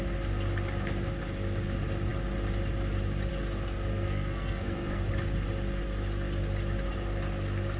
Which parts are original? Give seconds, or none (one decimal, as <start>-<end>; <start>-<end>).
0.0-3.9; 5.0-7.8